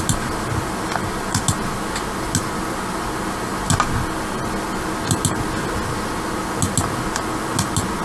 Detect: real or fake real